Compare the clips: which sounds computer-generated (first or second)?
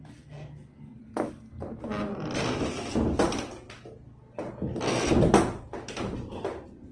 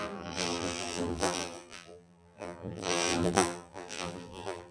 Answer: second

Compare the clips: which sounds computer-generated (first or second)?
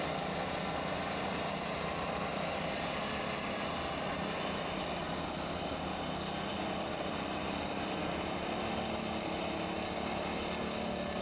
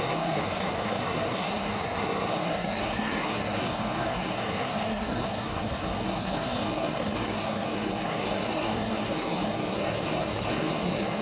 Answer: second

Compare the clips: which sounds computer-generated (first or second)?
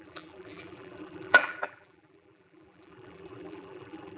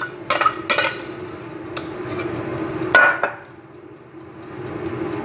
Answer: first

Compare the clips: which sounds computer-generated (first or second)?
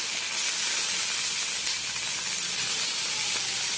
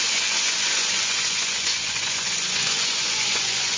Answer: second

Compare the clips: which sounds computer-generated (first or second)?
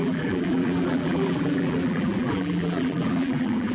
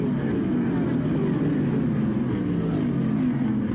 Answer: first